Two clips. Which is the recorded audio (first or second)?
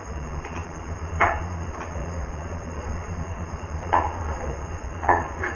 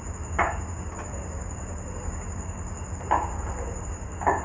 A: second